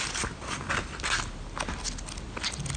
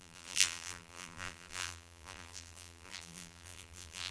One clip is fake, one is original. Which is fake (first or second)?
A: second